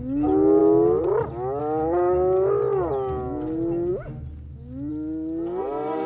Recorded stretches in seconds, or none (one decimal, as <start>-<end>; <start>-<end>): 0.0-6.1